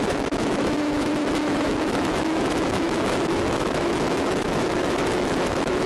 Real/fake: fake